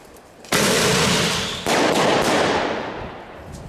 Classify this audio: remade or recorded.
recorded